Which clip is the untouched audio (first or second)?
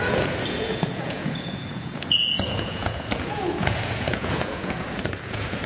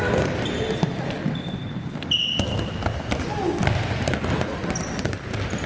second